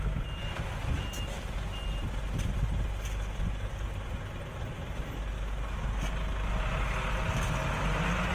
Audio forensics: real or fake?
real